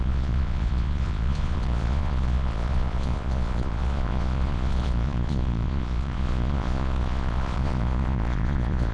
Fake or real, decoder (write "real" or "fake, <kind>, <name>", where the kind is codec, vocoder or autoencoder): fake, vocoder, Vocos